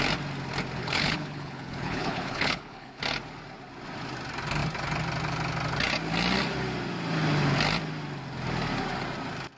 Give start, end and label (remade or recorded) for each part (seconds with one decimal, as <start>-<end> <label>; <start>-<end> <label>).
0.0-0.8 recorded; 0.8-3.0 remade; 3.0-9.6 recorded